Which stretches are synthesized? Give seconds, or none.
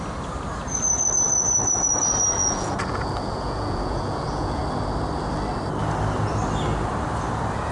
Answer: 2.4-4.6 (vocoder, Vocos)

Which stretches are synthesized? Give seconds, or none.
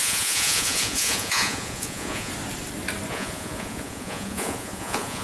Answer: 0.0-2.3 (vocoder, Vocos); 3.1-5.2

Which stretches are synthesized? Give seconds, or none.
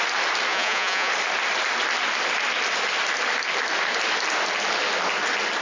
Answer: 0.5-1.1 (vocoder, Vocos)